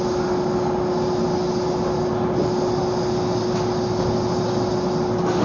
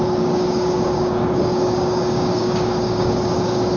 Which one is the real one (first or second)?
first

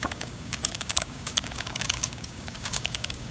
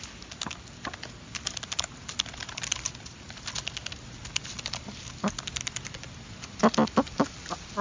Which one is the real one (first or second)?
second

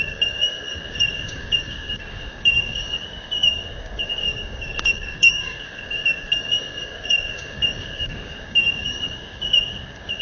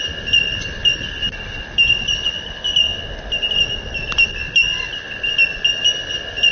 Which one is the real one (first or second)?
second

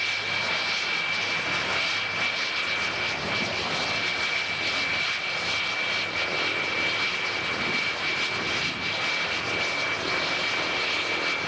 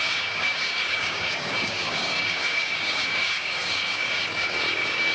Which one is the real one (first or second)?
first